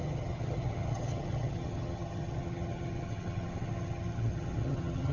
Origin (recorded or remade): remade